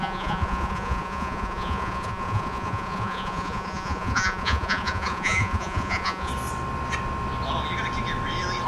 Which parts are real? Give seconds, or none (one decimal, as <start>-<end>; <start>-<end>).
6.3-8.7